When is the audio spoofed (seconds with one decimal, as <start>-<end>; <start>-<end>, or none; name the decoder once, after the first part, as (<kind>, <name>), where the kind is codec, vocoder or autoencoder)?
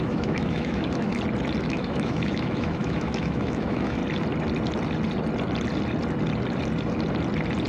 0.0-1.1 (autoencoder, DAC-VAE); 1.6-4.0